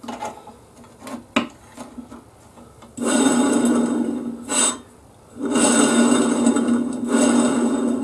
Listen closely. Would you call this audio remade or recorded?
recorded